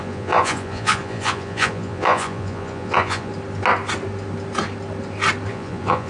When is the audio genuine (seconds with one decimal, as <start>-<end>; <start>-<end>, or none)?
3.3-5.5